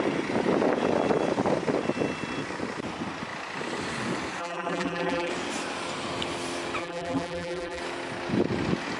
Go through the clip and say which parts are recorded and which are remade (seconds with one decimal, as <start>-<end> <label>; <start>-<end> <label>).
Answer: 0.0-4.4 recorded; 4.4-5.3 remade; 5.3-6.8 recorded; 6.8-7.8 remade; 7.8-9.0 recorded